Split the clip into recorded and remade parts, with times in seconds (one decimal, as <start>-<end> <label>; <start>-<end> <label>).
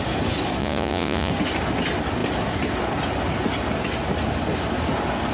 0.0-0.6 recorded; 0.6-1.3 remade; 1.3-5.3 recorded